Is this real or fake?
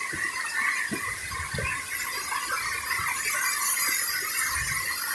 real